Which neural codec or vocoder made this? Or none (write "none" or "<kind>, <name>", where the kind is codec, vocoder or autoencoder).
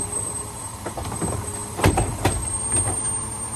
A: vocoder, BigVGAN v2